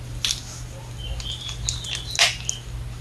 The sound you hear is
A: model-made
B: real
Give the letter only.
B